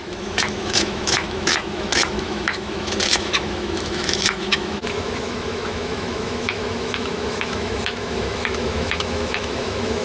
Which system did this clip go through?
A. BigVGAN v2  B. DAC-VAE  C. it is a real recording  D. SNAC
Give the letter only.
B